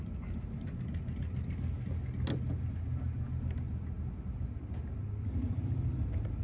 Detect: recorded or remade recorded